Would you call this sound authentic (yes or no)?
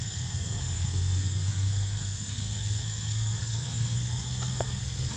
no